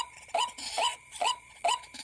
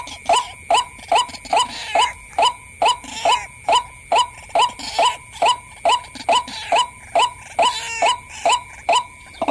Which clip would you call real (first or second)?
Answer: second